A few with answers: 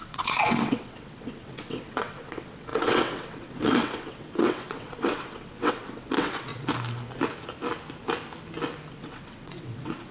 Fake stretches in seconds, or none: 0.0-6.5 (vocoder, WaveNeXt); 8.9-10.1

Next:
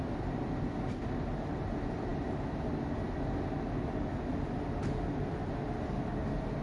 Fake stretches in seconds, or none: none

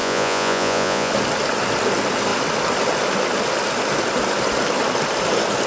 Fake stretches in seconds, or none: 0.0-1.1 (vocoder, Vocos)